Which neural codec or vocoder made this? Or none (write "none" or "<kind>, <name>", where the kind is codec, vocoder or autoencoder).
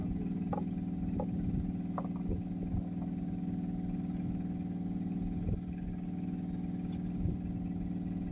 none